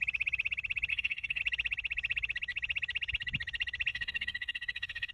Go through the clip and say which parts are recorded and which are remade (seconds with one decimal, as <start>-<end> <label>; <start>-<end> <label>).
0.0-0.9 recorded; 0.9-1.4 remade; 1.4-3.9 recorded; 3.9-5.1 remade